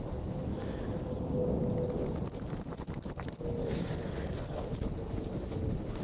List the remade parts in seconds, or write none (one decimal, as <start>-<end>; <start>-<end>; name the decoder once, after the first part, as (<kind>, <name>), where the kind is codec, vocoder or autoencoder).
0.0-0.5 (codec, HILCodec); 4.1-6.0